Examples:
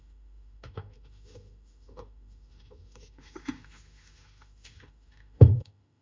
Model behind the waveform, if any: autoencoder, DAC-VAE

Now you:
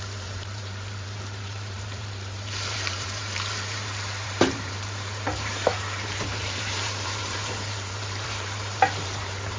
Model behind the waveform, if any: vocoder, BigVGAN v2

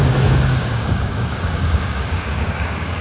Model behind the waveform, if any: codec, DAC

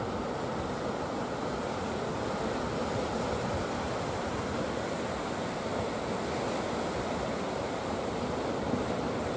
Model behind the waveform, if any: none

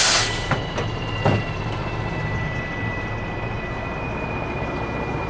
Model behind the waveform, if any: none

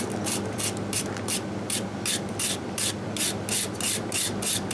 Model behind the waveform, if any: none